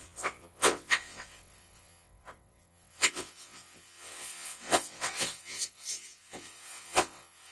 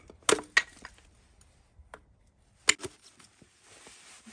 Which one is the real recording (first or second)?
second